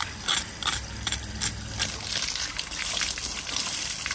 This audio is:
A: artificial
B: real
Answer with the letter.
B